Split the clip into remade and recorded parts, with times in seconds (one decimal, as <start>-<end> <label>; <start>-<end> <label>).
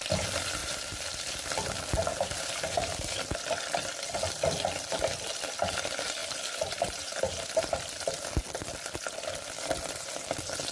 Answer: 0.0-0.6 recorded; 0.6-1.3 remade; 1.3-2.1 recorded; 2.1-3.2 remade; 3.2-6.2 recorded; 6.2-7.8 remade; 7.8-10.7 recorded